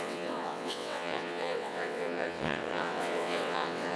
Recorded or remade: remade